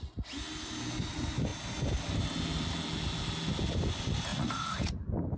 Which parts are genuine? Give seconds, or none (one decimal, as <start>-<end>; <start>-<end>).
0.0-4.3; 4.9-5.4